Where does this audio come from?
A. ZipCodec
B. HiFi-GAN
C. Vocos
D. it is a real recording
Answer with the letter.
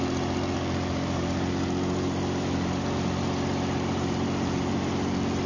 D